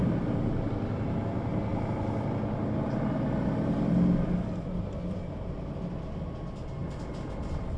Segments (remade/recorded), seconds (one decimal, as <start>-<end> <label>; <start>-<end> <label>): 0.0-7.8 recorded